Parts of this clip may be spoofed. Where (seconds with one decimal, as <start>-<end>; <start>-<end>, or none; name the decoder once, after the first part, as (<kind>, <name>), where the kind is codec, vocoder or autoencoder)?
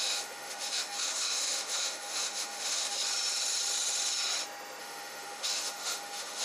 0.0-3.0 (autoencoder, DAC-VAE); 4.8-6.4